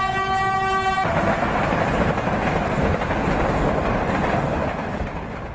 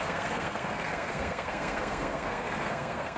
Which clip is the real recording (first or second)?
first